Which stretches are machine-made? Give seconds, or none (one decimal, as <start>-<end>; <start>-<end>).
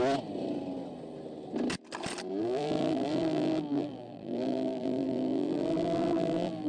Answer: 2.4-6.7